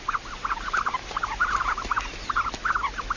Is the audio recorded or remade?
recorded